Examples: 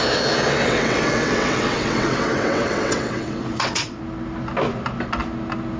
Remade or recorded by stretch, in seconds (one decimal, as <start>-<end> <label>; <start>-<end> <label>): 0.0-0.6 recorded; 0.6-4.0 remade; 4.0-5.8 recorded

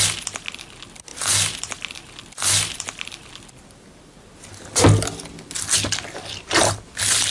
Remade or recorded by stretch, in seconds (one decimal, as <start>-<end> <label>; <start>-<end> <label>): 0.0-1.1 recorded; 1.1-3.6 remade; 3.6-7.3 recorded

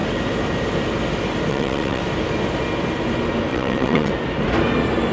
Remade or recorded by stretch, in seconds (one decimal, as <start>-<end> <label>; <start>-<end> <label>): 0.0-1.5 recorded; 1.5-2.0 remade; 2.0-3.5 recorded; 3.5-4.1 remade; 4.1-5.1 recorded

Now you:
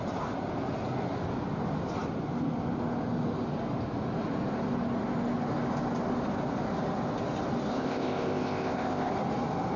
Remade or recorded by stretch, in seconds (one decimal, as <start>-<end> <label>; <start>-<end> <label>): 0.0-7.7 recorded; 7.7-9.1 remade; 9.1-9.8 recorded

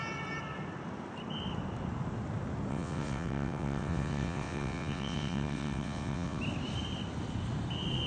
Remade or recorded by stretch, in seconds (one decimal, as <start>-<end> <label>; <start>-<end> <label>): 0.0-2.7 recorded; 2.7-6.4 remade; 6.4-8.1 recorded

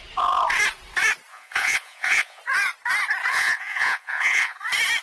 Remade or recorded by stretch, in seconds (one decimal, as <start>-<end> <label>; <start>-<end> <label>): 0.0-1.3 recorded; 1.3-2.4 remade; 2.4-3.3 recorded; 3.3-4.6 remade; 4.6-5.0 recorded

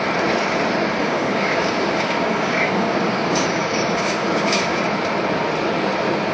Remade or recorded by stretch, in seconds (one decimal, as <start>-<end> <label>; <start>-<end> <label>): 0.0-1.0 recorded; 1.0-4.8 remade; 4.8-6.3 recorded